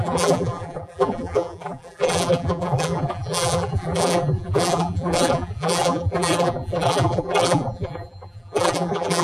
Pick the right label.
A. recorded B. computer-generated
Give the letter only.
B